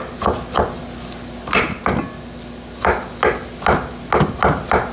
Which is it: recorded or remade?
recorded